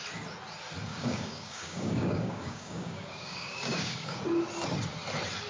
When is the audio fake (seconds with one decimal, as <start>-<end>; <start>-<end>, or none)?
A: 0.9-4.2